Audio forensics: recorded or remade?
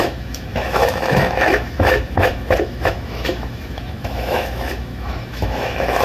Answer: remade